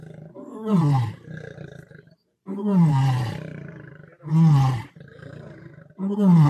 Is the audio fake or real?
fake